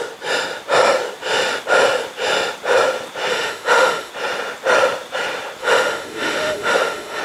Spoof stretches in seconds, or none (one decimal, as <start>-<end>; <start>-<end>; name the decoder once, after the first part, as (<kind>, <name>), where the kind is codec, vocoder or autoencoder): 3.3-4.1 (autoencoder, DAC-VAE); 5.6-7.2